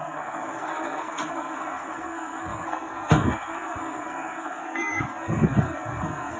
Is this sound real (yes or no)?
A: no